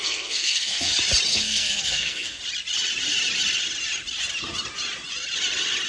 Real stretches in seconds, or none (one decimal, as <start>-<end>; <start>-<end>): 0.9-1.3; 2.4-5.9